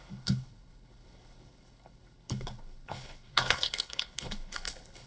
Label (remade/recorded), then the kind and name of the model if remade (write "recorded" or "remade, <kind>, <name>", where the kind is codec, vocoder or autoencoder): remade, codec, HILCodec